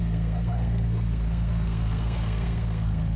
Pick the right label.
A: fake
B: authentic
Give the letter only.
A